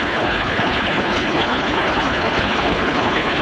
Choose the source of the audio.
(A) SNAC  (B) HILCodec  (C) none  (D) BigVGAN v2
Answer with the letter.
B